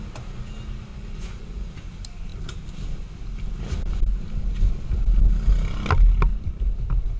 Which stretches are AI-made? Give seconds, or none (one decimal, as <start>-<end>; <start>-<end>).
0.9-1.7